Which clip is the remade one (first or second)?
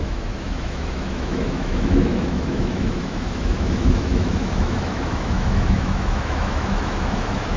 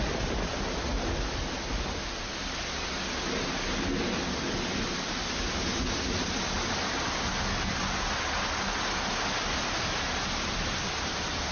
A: first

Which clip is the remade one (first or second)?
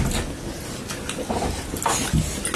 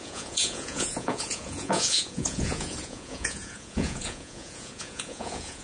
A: second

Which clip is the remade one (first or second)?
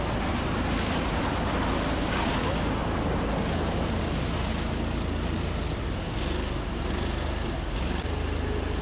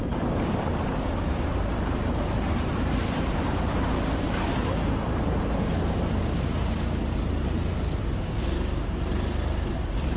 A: second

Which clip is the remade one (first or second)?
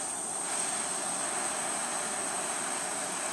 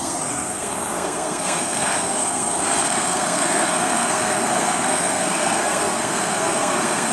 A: second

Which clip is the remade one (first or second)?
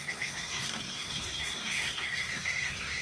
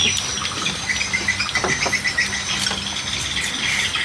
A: first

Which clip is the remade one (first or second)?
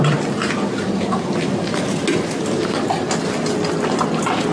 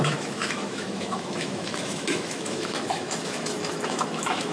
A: second